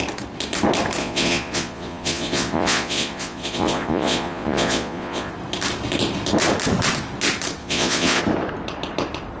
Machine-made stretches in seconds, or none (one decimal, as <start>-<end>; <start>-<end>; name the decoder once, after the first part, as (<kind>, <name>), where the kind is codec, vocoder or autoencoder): 1.0-5.3 (vocoder, Vocos); 7.6-8.2